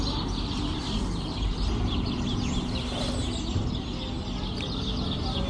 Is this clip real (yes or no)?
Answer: yes